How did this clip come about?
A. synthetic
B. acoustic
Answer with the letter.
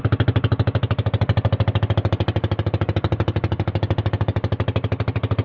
B